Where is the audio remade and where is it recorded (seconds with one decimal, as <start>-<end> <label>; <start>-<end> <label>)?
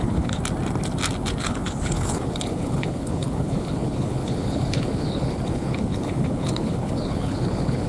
0.0-0.4 remade; 0.4-1.4 recorded; 1.4-7.9 remade